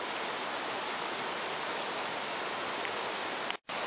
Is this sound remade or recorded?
recorded